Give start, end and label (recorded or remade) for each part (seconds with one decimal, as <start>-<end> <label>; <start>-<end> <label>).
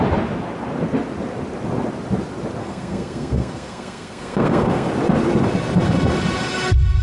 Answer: 0.0-2.6 recorded; 2.6-4.9 remade; 4.9-7.0 recorded